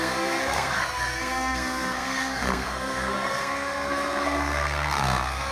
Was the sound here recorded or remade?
remade